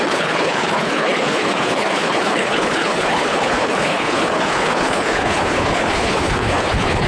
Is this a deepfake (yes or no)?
yes